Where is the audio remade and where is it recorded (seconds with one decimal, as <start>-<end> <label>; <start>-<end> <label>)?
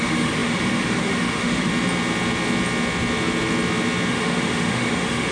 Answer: 0.0-1.7 remade; 1.7-4.1 recorded; 4.1-5.3 remade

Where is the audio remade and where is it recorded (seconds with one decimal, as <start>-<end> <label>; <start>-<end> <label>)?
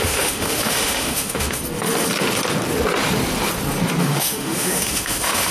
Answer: 0.0-1.6 remade; 1.6-4.0 recorded; 4.0-5.5 remade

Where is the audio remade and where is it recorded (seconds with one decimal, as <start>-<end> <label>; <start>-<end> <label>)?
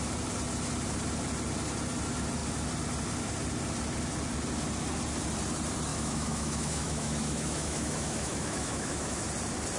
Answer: 0.0-5.9 recorded; 5.9-9.3 remade; 9.3-9.8 recorded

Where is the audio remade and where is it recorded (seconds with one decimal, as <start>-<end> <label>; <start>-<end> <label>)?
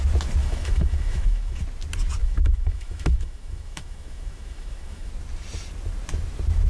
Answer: 0.0-0.4 recorded; 0.4-1.6 remade; 1.6-2.2 recorded; 2.2-5.1 remade; 5.1-6.7 recorded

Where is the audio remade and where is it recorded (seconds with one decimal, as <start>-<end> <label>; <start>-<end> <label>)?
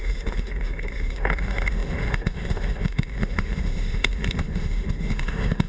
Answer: 0.0-5.7 remade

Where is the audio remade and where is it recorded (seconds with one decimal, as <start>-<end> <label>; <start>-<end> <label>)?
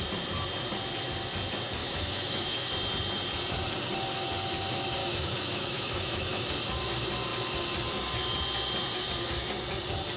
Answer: 0.0-1.8 recorded; 1.8-2.7 remade; 2.7-5.0 recorded; 5.0-6.5 remade; 6.5-10.2 recorded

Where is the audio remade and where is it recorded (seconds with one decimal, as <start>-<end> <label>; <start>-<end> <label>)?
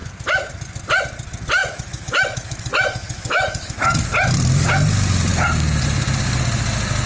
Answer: 0.0-1.6 recorded; 1.6-4.0 remade; 4.0-7.1 recorded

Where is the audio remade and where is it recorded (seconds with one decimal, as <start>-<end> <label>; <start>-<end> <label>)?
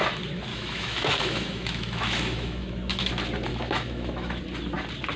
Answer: 0.0-0.5 recorded; 0.5-3.1 remade; 3.1-3.5 recorded; 3.5-4.4 remade; 4.4-5.2 recorded